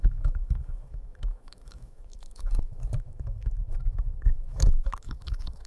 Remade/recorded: remade